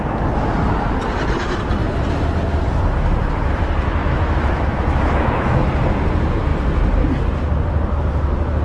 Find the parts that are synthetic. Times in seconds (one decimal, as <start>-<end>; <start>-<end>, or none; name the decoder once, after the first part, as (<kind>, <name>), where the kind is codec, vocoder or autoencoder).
4.0-5.7 (autoencoder, DAC-VAE)